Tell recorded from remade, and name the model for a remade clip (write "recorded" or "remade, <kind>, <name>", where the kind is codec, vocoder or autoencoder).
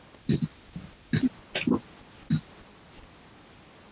recorded